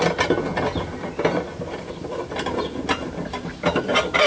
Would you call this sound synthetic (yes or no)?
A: no